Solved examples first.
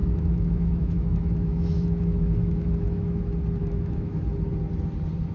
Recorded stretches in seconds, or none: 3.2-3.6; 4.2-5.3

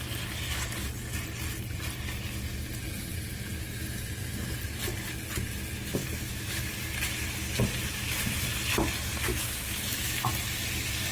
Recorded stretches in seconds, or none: 0.0-6.0; 6.7-9.3; 10.3-11.1

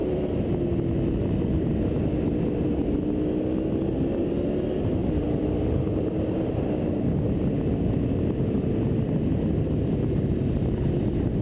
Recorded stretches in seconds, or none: 0.5-5.0; 6.1-11.4

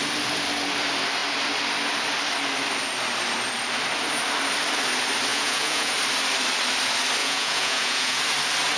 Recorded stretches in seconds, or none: 0.0-5.3; 5.9-7.2; 8.2-8.8